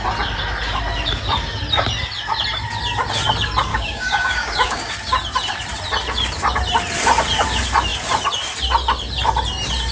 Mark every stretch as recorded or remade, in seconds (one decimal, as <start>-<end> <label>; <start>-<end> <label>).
0.0-3.7 recorded; 3.7-4.9 remade; 4.9-9.9 recorded